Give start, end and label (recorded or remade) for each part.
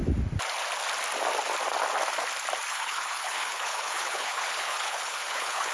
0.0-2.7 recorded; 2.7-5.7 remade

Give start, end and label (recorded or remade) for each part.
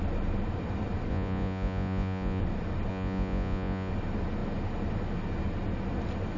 0.0-1.1 recorded; 1.1-2.4 remade; 2.4-2.9 recorded; 2.9-3.9 remade; 3.9-6.4 recorded